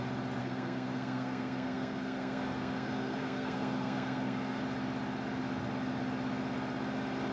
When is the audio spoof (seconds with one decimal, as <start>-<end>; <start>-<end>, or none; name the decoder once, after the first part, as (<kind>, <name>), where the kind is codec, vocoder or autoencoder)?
0.4-4.6 (codec, SNAC)